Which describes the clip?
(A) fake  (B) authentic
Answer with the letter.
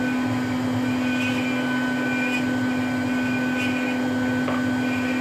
B